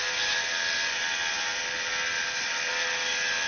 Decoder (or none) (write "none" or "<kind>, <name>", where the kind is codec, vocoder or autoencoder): none